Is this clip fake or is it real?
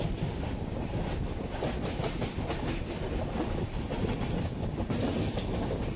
real